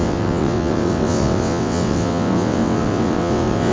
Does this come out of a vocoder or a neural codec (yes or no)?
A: yes